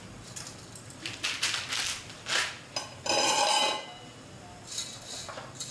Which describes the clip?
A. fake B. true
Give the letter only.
B